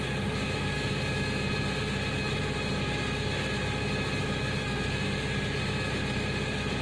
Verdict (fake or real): real